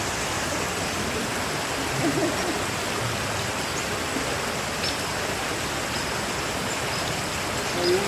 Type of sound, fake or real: real